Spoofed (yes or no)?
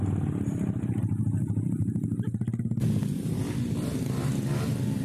no